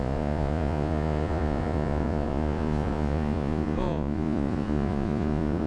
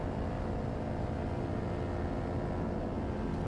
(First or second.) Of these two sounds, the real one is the second